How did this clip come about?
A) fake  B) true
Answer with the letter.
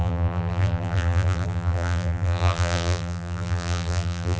A